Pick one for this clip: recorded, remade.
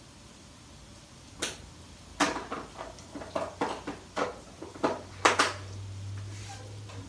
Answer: recorded